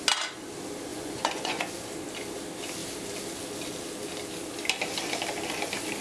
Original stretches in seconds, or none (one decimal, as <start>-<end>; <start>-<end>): 0.0-0.9; 1.6-6.0